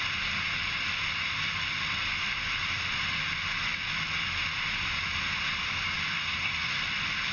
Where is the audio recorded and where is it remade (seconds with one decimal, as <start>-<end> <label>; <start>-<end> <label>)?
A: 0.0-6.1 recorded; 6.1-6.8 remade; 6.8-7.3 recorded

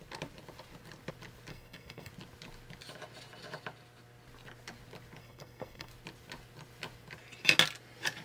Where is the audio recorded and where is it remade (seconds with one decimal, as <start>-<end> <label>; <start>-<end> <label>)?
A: 0.0-1.5 recorded; 1.5-2.1 remade; 2.1-5.2 recorded; 5.2-5.9 remade; 5.9-8.2 recorded

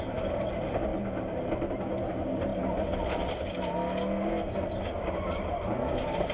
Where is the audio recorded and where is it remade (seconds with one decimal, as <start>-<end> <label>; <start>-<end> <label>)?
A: 0.0-6.3 recorded